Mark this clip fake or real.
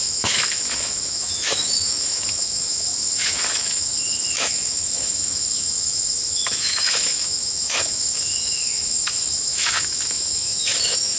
fake